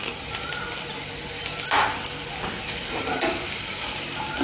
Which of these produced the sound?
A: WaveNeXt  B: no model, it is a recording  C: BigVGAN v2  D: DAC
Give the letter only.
B